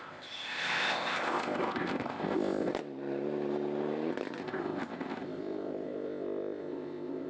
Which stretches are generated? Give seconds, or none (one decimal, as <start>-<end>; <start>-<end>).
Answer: 0.0-2.7; 4.4-7.3